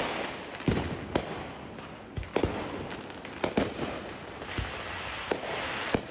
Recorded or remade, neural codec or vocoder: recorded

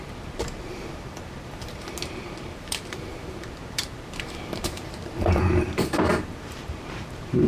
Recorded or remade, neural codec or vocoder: remade, vocoder, BigVGAN v2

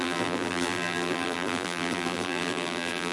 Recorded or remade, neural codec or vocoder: remade, vocoder, BigVGAN v2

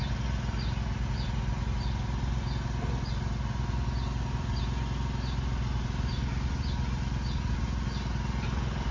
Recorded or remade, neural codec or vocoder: recorded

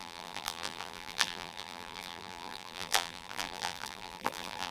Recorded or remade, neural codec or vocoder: remade, vocoder, BigVGAN v2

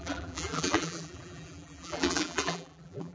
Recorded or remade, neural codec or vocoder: remade, vocoder, BigVGAN v2